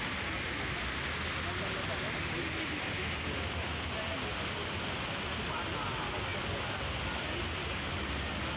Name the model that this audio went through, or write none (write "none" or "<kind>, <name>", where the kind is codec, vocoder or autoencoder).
none